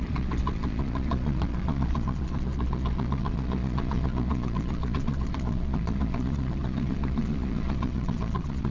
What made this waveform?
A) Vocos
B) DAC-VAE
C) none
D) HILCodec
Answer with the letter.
A